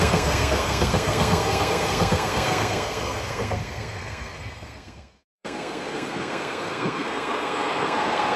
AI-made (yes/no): yes